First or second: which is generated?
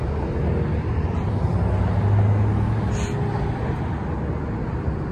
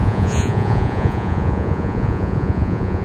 second